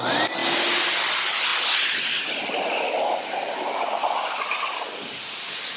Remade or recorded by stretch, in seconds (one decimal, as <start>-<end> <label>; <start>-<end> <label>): 0.0-5.8 recorded